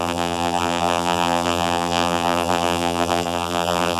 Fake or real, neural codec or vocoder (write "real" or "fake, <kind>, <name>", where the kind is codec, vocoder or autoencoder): fake, vocoder, BigVGAN v2